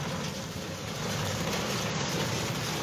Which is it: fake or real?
fake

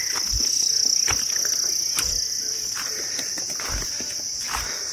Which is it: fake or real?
real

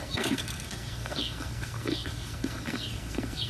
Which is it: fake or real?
fake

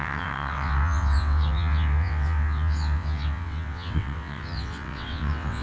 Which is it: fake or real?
fake